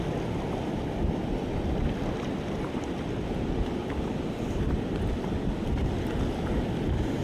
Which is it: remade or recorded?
recorded